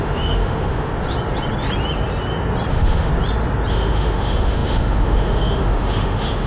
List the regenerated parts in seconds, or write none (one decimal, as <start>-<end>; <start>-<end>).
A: 0.0-0.9; 2.7-3.1; 3.7-6.5